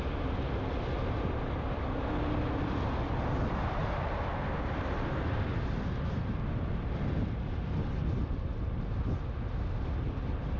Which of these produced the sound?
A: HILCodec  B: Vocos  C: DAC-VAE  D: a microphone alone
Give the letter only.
D